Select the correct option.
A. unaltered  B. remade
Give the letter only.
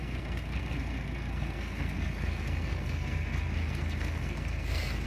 B